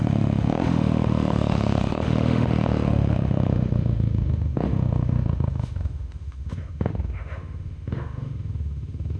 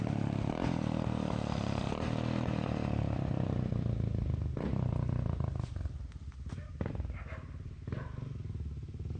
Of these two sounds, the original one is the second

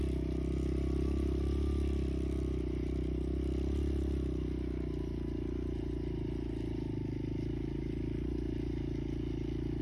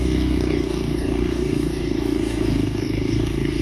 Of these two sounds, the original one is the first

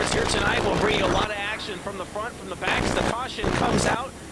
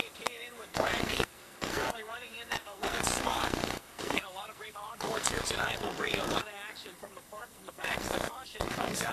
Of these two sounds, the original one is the first